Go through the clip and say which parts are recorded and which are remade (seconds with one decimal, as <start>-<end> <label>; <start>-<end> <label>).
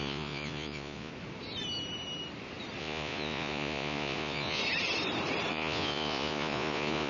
0.0-1.1 remade; 1.1-2.8 recorded; 2.8-4.6 remade; 4.6-5.5 recorded; 5.5-7.1 remade